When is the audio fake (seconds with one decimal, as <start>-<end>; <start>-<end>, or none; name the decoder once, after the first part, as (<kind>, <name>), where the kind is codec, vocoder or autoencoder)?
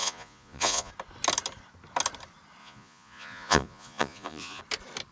0.0-0.9 (vocoder, Vocos); 2.6-4.6